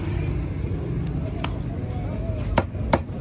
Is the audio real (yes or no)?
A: yes